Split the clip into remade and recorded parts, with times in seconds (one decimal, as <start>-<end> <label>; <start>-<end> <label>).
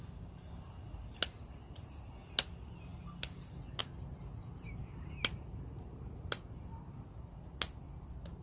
0.0-8.4 recorded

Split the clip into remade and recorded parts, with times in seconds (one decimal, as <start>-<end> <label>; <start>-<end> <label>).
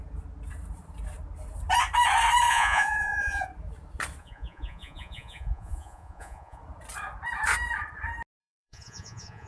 0.0-2.5 recorded; 2.5-3.5 remade; 3.5-4.2 recorded; 4.2-6.6 remade; 6.6-8.4 recorded; 8.4-9.5 remade